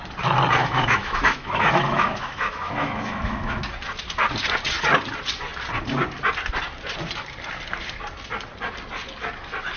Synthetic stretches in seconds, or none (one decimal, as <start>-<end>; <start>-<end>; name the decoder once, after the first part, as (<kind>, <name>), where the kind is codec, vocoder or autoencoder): 0.6-3.7 (autoencoder, DAC-VAE)